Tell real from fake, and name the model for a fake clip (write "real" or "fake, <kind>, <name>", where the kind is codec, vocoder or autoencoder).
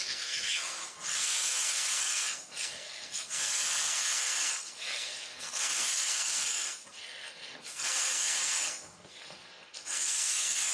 fake, codec, SNAC